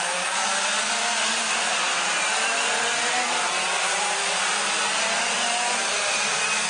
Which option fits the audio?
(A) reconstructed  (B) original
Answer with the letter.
A